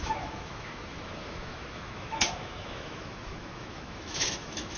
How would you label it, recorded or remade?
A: remade